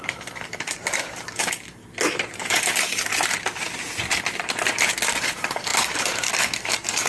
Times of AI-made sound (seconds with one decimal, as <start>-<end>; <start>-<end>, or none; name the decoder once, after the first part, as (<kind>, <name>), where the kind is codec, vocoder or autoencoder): 0.0-1.8 (codec, DAC); 2.4-3.1; 5.1-7.1

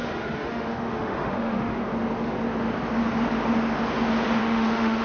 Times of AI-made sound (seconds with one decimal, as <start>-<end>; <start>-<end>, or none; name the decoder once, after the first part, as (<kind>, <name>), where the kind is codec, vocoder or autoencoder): 0.0-1.8 (autoencoder, DAC-VAE); 4.4-5.0

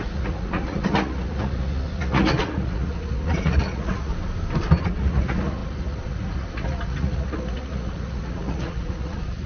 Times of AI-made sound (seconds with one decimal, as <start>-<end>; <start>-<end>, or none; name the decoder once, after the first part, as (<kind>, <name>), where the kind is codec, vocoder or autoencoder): 0.0-4.1 (vocoder, Vocos); 4.8-9.5

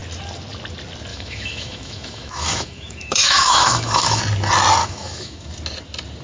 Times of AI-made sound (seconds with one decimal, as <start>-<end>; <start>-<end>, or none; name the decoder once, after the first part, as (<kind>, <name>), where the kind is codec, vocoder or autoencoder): 1.1-4.2 (autoencoder, DAC-VAE); 4.8-5.5